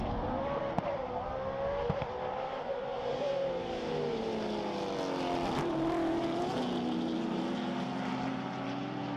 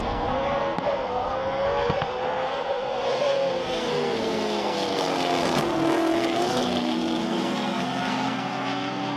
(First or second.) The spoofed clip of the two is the second